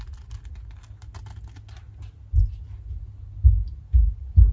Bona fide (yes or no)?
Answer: yes